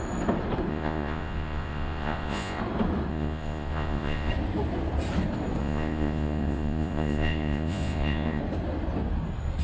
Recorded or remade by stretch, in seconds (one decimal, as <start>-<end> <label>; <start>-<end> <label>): 0.0-0.7 recorded; 0.7-2.6 remade; 2.6-3.1 recorded; 3.1-4.3 remade; 4.3-5.6 recorded; 5.6-8.4 remade; 8.4-9.6 recorded

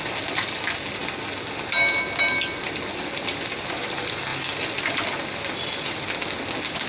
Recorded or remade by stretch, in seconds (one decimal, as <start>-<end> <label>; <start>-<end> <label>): 0.0-6.9 recorded